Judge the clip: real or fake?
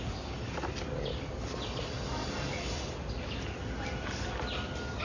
real